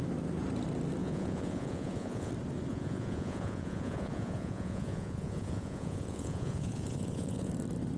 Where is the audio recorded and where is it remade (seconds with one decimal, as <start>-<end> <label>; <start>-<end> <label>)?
0.0-1.0 recorded; 1.0-2.3 remade; 2.3-2.7 recorded; 2.7-7.5 remade; 7.5-8.0 recorded

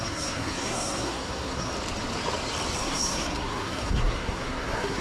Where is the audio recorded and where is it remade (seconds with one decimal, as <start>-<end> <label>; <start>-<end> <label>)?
0.0-1.7 remade; 1.7-2.8 recorded; 2.8-5.0 remade

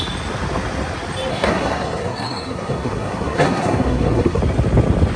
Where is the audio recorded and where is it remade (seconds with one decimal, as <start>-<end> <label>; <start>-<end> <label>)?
0.0-1.3 recorded; 1.3-4.4 remade; 4.4-5.2 recorded

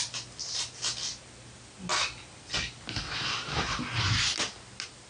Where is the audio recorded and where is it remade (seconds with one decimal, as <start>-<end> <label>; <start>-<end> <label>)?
0.0-5.1 recorded

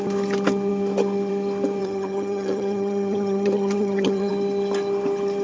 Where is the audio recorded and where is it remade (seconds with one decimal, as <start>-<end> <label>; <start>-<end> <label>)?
0.0-1.8 recorded; 1.8-4.3 remade; 4.3-5.4 recorded

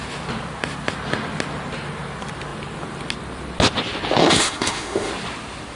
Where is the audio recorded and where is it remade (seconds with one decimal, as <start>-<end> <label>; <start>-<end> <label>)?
0.0-4.2 recorded; 4.2-5.1 remade; 5.1-5.8 recorded

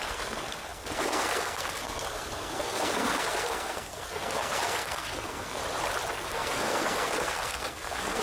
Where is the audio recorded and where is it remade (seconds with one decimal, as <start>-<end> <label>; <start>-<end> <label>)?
0.0-5.6 remade; 5.6-6.1 recorded; 6.1-8.2 remade